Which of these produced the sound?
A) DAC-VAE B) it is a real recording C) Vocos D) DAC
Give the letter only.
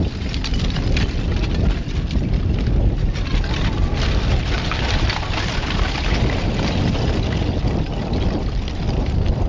B